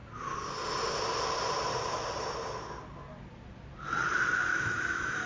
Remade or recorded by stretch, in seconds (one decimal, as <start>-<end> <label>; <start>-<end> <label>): 0.0-4.5 recorded; 4.5-5.3 remade